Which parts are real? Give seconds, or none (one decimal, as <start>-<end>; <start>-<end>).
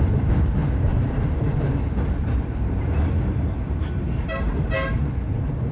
none